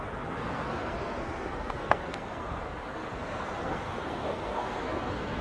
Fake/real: fake